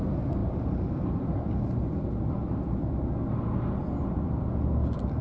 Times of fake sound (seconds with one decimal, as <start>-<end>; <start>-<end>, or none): 0.4-1.6